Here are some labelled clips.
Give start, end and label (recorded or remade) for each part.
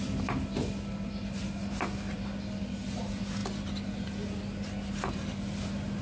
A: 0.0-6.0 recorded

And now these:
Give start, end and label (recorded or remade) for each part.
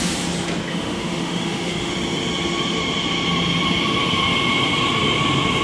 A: 0.0-0.7 recorded; 0.7-1.9 remade; 1.9-5.6 recorded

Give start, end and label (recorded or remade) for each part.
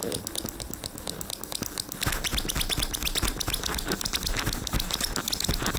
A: 0.0-5.8 recorded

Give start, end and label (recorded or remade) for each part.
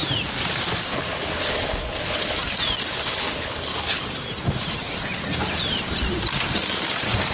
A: 0.0-0.9 recorded; 0.9-2.4 remade; 2.4-2.9 recorded; 2.9-3.7 remade; 3.7-7.3 recorded